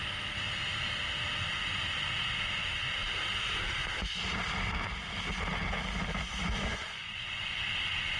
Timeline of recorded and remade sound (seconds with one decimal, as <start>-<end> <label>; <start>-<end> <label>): 0.0-6.3 recorded; 6.3-7.7 remade; 7.7-8.2 recorded